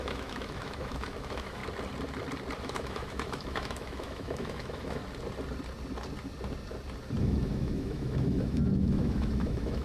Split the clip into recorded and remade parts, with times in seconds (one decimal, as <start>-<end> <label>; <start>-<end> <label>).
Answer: 0.0-1.6 remade; 1.6-2.6 recorded; 2.6-5.0 remade; 5.0-7.2 recorded; 7.2-9.8 remade